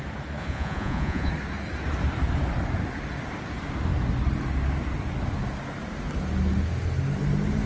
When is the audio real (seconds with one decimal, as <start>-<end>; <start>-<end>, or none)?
0.0-0.4; 1.3-7.7